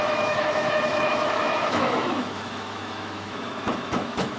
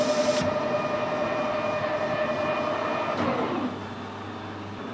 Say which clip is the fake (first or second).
first